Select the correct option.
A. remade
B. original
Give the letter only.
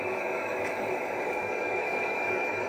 A